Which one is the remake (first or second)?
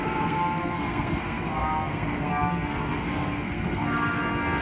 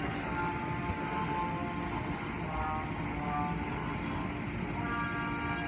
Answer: first